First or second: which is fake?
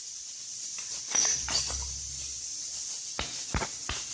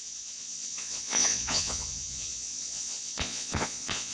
second